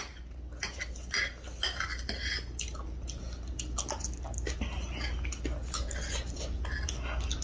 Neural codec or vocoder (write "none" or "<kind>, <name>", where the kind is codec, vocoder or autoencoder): none